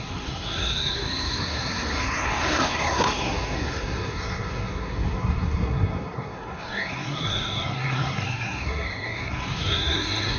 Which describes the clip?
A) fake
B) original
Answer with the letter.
A